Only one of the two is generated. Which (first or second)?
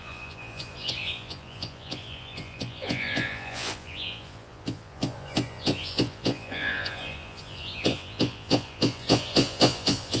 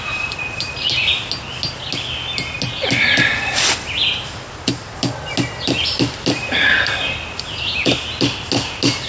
first